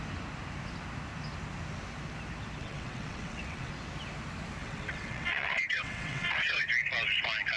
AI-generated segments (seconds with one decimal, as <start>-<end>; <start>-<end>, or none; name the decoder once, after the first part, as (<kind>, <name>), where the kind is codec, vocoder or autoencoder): 2.6-3.7 (vocoder, WaveNeXt); 4.6-6.7